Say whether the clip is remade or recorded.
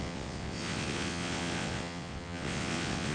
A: remade